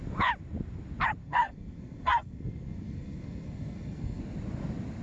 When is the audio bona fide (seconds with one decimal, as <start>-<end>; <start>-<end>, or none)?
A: 0.0-1.2; 4.2-5.0

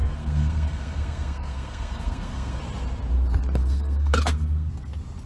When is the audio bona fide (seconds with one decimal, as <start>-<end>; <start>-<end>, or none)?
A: 2.6-3.6; 4.7-5.3

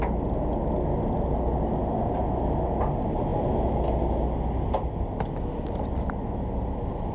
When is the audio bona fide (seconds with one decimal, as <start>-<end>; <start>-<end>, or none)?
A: 0.0-7.1

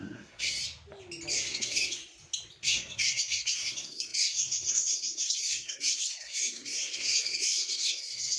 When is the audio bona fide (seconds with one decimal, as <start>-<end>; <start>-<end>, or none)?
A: 0.6-1.3; 2.0-2.6

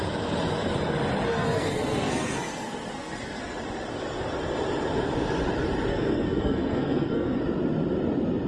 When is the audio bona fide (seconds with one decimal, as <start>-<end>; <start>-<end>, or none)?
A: 0.0-1.3; 3.4-5.9; 7.4-8.5

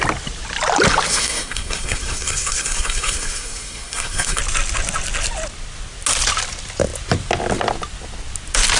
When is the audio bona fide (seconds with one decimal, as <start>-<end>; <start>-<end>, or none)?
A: 0.0-1.1; 4.4-8.8

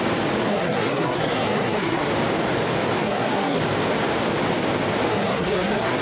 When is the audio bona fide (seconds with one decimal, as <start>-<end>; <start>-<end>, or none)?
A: 0.0-0.5; 2.1-3.0; 3.6-5.1